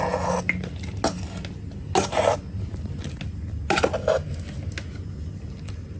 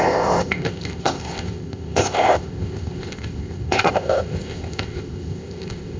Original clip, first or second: first